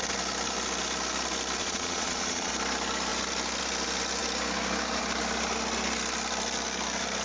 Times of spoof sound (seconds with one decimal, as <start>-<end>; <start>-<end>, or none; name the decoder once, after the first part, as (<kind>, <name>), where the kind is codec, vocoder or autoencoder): 1.6-2.5 (vocoder, Vocos)